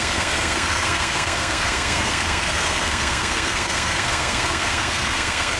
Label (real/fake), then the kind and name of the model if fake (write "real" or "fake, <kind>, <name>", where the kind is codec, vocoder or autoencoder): fake, codec, SNAC